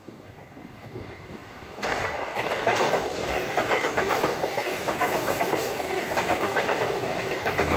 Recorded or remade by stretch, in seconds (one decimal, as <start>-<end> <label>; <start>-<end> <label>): 0.0-7.8 remade